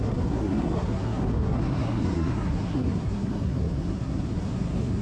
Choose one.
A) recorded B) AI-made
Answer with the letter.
B